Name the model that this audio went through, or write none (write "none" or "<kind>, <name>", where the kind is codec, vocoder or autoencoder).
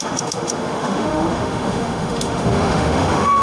autoencoder, DAC-VAE